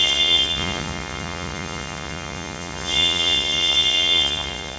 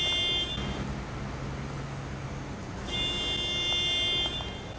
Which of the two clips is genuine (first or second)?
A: second